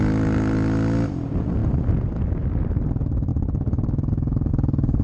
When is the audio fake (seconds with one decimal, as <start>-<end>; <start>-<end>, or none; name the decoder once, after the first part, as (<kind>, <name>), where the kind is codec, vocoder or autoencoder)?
none